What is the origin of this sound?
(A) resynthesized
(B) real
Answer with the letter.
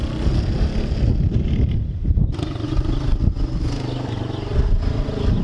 B